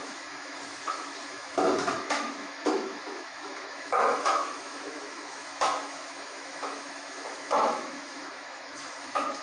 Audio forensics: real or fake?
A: fake